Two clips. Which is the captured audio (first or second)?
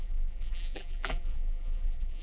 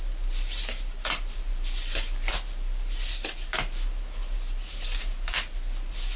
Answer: second